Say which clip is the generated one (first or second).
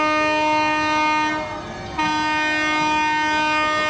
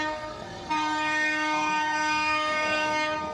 second